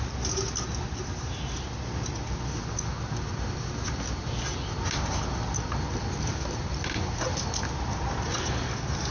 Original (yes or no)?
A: yes